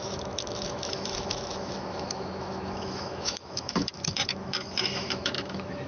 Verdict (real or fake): fake